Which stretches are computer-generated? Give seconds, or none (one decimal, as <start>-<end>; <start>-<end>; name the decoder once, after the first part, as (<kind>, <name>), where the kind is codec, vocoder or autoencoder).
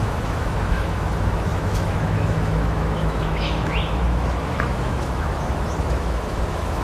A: 0.0-6.8 (autoencoder, DAC-VAE)